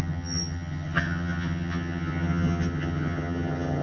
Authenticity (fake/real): fake